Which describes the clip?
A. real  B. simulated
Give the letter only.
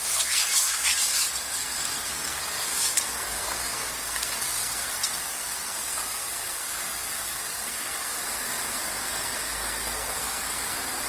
B